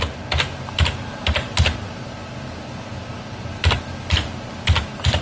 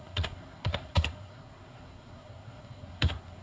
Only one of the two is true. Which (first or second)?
first